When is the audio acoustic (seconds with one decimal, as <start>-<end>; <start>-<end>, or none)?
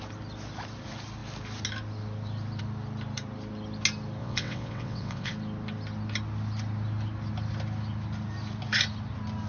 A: 0.0-4.2; 5.3-9.5